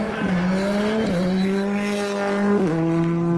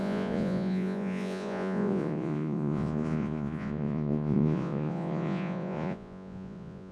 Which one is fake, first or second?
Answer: second